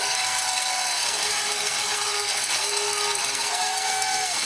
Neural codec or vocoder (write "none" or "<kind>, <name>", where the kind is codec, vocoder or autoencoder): codec, SNAC